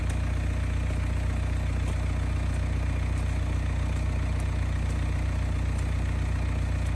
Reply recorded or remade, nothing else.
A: recorded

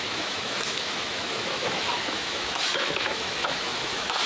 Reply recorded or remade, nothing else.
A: remade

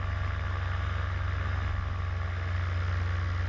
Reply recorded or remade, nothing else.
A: recorded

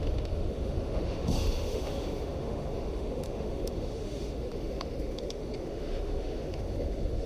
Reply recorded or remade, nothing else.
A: remade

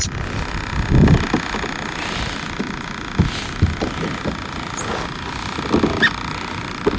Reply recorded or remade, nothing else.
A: recorded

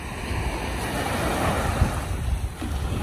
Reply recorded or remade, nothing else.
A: recorded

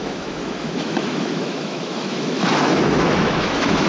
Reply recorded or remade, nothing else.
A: remade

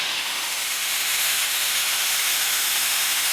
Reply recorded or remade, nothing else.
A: remade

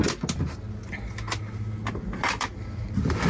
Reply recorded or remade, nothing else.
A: recorded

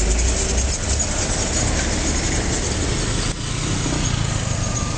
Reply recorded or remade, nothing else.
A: recorded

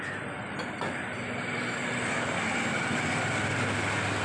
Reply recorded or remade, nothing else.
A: recorded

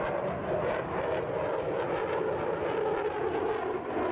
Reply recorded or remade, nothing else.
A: recorded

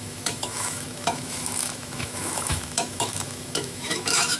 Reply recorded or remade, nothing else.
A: remade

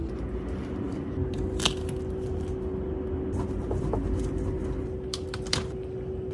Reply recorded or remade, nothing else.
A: recorded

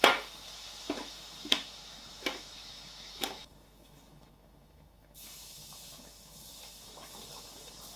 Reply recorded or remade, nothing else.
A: remade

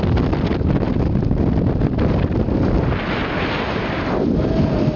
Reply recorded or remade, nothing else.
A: recorded